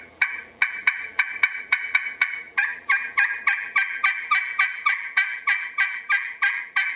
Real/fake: fake